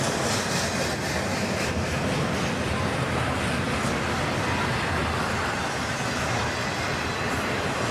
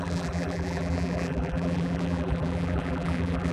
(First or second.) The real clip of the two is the first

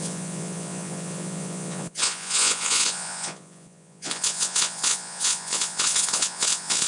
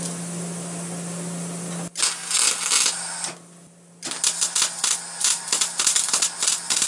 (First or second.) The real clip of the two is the second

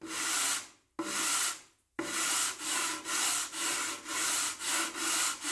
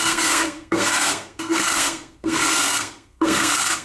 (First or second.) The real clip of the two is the first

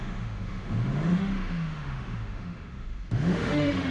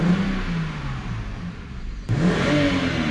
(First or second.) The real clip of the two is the second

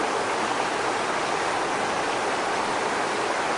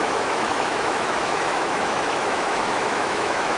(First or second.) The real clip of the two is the first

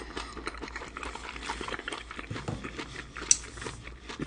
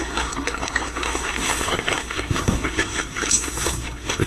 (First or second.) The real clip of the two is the first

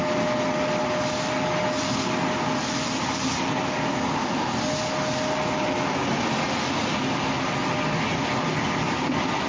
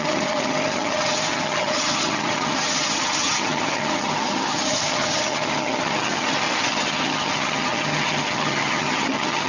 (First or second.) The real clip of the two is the first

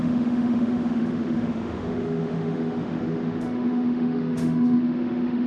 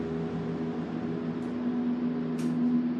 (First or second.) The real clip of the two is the second